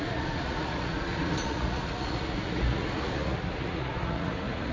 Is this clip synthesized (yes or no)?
yes